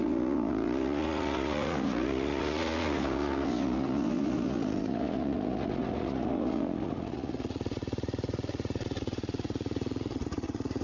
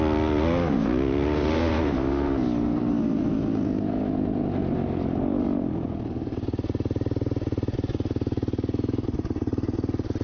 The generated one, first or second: first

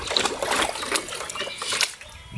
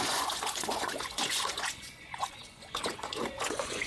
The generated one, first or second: second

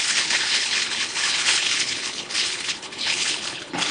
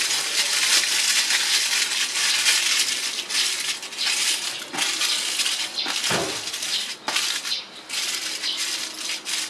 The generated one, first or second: first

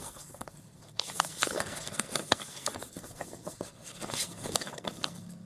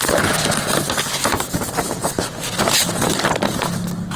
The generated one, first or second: first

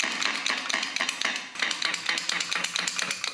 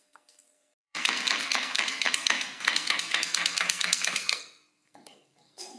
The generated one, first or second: second